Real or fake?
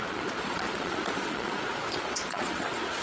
fake